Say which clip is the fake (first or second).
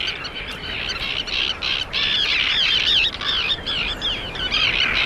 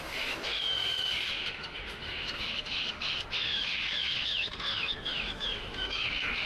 second